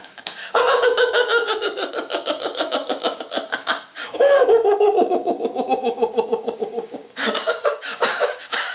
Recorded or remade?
remade